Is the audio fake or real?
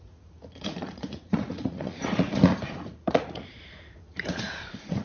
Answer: fake